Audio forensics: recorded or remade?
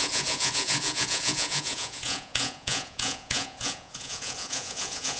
remade